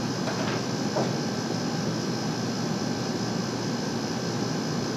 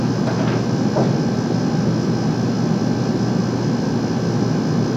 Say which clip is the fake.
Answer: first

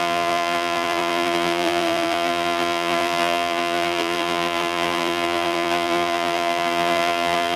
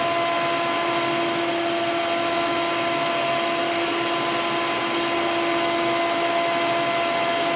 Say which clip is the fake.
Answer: first